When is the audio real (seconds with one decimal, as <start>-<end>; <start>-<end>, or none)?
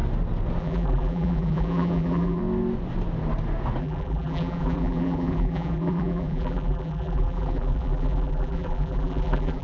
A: 0.0-0.6; 2.4-3.8